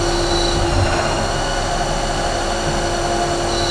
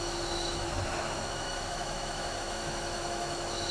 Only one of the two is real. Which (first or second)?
first